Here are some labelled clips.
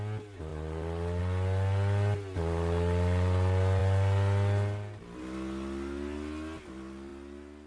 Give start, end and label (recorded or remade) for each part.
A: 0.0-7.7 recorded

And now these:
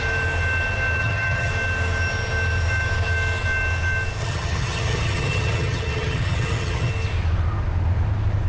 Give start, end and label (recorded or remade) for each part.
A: 0.0-1.0 recorded; 1.0-1.5 remade; 1.5-4.2 recorded; 4.2-6.9 remade; 6.9-8.5 recorded

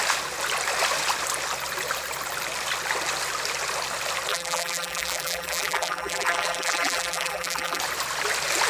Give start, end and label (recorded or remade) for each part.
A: 0.0-4.3 recorded; 4.3-7.8 remade; 7.8-8.7 recorded

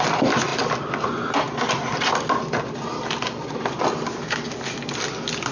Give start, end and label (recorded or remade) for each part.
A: 0.0-5.5 recorded

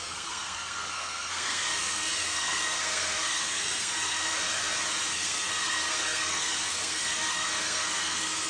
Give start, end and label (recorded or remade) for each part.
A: 0.0-4.4 remade; 4.4-5.1 recorded; 5.1-8.5 remade

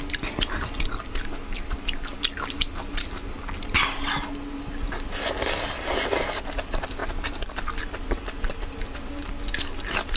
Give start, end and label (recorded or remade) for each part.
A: 0.0-10.2 recorded

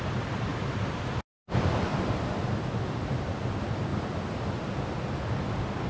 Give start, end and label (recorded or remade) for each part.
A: 0.0-0.5 remade; 0.5-1.4 recorded; 1.4-3.9 remade; 3.9-5.4 recorded; 5.4-5.9 remade